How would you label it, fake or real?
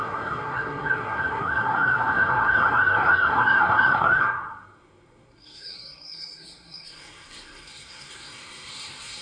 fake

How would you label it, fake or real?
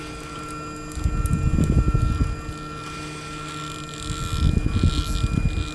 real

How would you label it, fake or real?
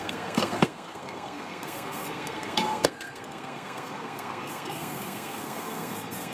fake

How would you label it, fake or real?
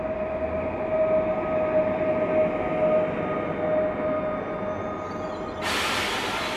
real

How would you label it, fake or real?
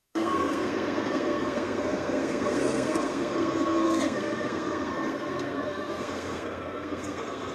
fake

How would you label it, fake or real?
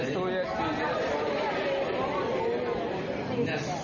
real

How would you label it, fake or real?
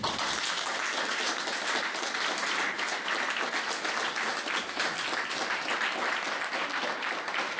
real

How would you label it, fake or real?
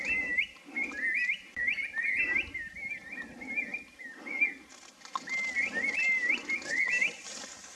real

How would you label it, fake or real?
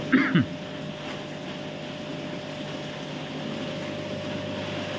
real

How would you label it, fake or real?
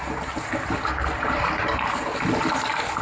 real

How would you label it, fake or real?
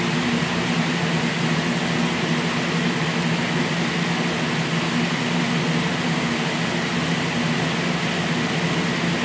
real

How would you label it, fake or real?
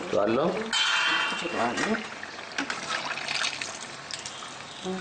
real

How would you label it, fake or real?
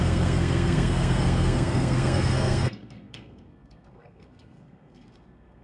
fake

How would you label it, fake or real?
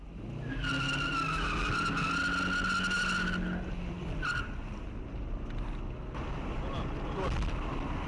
real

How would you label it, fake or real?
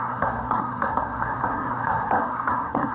fake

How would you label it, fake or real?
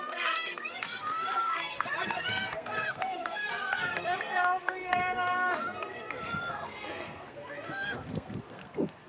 fake